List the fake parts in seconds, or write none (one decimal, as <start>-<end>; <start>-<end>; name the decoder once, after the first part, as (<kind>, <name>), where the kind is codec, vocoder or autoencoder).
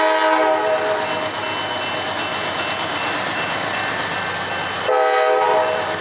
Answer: none